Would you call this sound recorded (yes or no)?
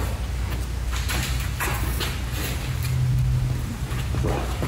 yes